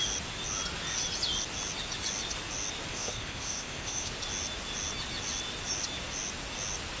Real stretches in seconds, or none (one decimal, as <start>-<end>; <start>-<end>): 0.0-2.9; 4.1-7.0